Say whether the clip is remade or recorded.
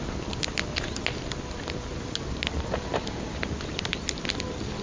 recorded